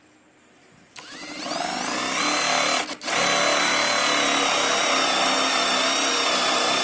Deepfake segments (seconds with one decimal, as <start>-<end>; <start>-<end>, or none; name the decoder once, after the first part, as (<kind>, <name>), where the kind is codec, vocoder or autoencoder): none